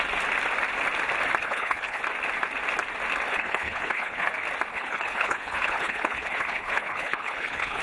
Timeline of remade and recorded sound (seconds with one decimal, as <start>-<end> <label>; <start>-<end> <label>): 0.0-1.4 recorded; 1.4-2.0 remade; 2.0-3.3 recorded; 3.3-4.3 remade; 4.3-4.7 recorded; 4.7-7.8 remade